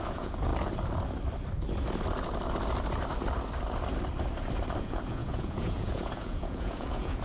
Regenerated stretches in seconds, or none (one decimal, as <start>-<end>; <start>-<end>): 0.0-0.5; 4.8-7.2